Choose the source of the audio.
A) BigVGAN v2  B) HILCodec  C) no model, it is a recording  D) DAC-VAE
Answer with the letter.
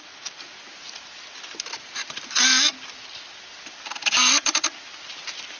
C